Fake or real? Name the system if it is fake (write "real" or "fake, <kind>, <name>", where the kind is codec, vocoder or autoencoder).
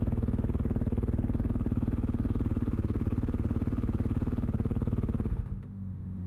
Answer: fake, autoencoder, DAC-VAE